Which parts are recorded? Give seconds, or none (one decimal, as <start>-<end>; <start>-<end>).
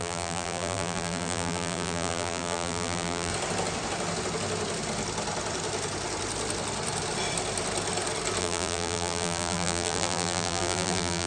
3.3-8.4